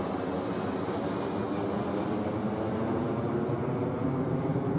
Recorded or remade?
recorded